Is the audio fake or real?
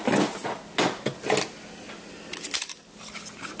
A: real